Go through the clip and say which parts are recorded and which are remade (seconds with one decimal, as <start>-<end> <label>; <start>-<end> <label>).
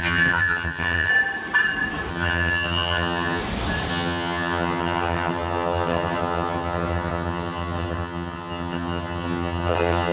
0.0-1.1 remade; 1.1-2.1 recorded; 2.1-3.4 remade; 3.4-3.9 recorded; 3.9-10.1 remade